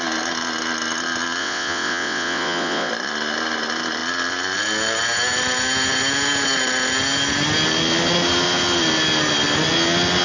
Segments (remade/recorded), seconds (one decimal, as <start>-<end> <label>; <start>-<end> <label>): 0.0-1.4 recorded; 1.4-2.9 remade; 2.9-10.2 recorded